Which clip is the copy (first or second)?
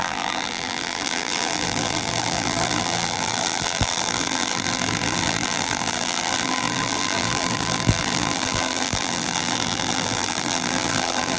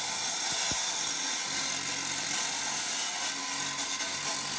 first